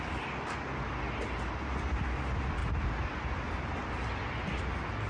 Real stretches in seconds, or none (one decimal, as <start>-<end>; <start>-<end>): 0.0-5.1